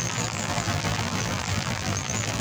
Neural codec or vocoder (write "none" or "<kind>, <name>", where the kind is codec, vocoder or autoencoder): vocoder, BigVGAN v2